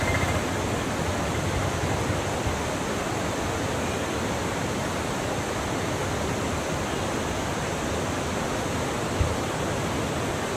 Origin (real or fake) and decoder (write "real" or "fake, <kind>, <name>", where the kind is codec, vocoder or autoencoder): real